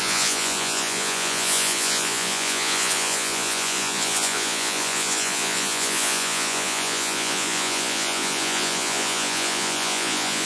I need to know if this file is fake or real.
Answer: fake